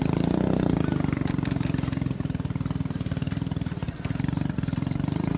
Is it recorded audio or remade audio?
remade